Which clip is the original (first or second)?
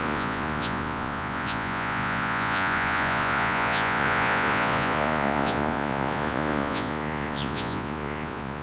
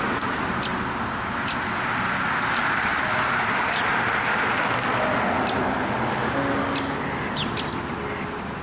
second